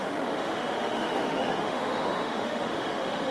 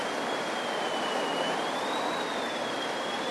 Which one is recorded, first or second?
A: second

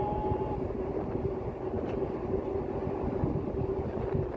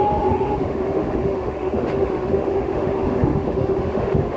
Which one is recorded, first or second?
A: first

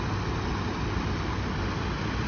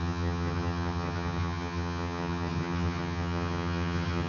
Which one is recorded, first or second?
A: first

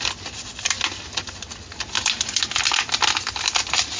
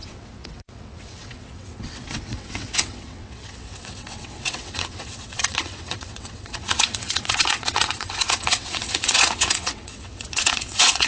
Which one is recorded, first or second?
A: first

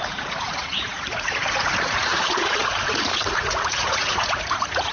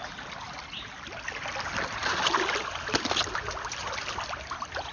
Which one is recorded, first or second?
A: second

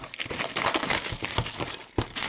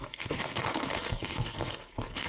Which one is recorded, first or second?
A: first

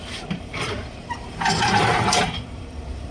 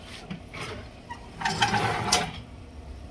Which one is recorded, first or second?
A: second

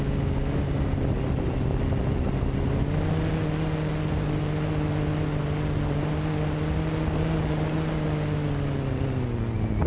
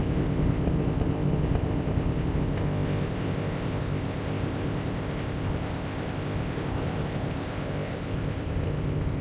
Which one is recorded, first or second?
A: first